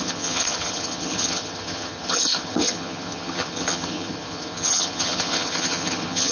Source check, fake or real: fake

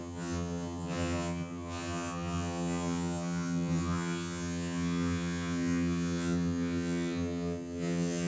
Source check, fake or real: fake